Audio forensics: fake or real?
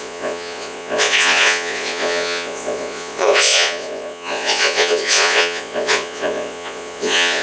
fake